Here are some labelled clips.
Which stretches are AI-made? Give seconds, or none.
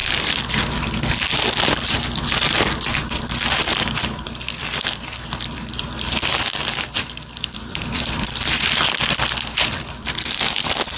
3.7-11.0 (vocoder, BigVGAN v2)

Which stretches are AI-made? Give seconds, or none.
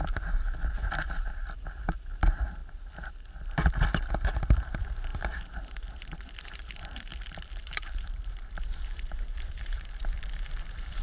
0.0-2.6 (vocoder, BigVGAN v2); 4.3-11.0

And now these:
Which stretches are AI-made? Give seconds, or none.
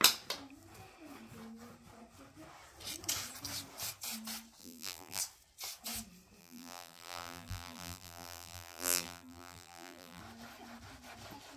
4.6-5.2 (vocoder, BigVGAN v2); 6.4-10.2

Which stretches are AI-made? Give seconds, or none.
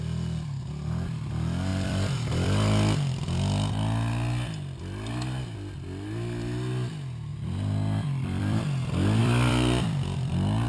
1.7-4.8 (vocoder, BigVGAN v2); 7.3-8.6; 9.2-10.7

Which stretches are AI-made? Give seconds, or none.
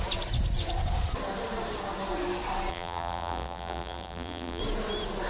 2.7-4.6 (vocoder, BigVGAN v2)